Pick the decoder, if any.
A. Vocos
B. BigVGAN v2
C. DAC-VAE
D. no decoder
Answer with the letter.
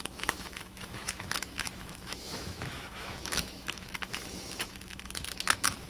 C